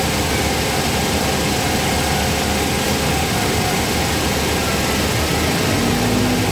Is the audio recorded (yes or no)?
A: yes